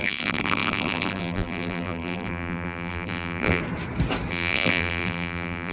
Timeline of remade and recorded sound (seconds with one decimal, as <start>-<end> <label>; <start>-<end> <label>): 0.0-3.6 remade; 3.6-4.3 recorded; 4.3-5.7 remade